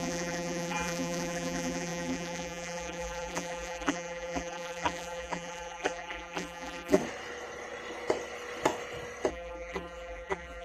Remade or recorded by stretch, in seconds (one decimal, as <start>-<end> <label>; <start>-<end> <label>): 0.0-7.0 remade; 7.0-9.3 recorded; 9.3-10.6 remade